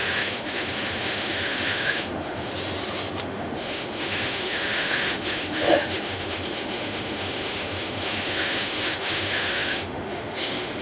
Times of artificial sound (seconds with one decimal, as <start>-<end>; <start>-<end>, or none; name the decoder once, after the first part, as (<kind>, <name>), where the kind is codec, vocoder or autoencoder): 0.0-2.5 (autoencoder, DAC-VAE); 3.2-10.8